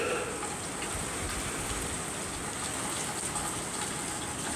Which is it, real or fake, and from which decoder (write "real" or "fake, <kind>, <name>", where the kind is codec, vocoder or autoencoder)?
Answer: real